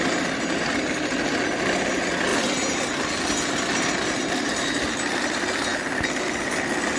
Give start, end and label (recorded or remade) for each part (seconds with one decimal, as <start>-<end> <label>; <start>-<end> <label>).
0.0-7.0 recorded